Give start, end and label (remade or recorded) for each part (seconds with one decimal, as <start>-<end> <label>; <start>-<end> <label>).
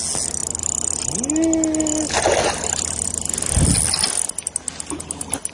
0.0-5.5 recorded